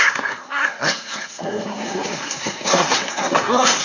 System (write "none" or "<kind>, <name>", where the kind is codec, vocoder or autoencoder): codec, SNAC